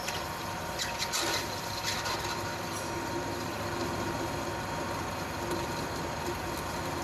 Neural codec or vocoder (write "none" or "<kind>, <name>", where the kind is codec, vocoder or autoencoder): none